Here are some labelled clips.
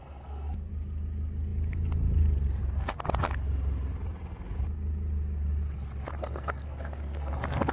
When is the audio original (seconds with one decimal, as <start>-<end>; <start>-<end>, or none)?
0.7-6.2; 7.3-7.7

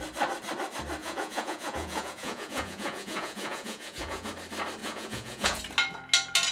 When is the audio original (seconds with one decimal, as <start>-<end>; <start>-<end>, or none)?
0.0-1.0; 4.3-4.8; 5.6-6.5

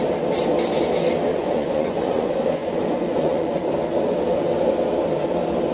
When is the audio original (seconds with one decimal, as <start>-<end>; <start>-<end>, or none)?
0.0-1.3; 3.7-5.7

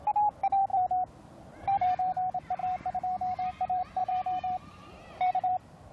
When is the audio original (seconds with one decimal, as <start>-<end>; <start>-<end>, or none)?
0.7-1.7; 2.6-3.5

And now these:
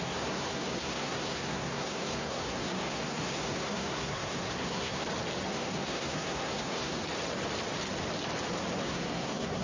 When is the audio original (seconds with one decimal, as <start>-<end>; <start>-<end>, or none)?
5.0-5.5; 7.0-8.8

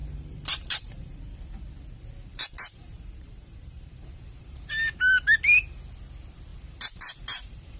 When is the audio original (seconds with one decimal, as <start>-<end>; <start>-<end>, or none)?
1.2-2.3; 4.7-6.5

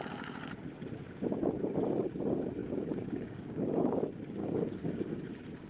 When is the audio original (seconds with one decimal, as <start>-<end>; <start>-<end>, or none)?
0.0-2.6; 4.0-4.4; 5.3-5.7

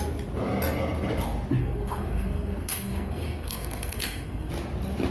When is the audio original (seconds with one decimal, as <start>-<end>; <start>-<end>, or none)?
0.0-1.6; 4.5-5.1